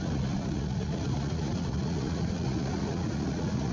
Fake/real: fake